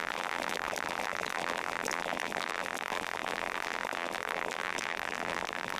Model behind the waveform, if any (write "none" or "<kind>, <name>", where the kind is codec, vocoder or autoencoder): vocoder, BigVGAN v2